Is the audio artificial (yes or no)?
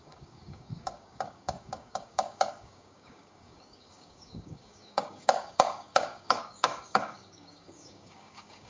yes